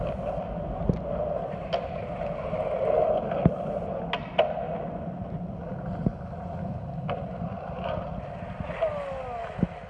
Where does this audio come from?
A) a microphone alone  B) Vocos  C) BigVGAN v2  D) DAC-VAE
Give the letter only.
A